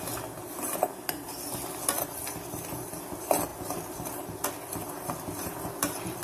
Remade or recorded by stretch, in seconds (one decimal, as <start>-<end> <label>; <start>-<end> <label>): 0.0-6.2 recorded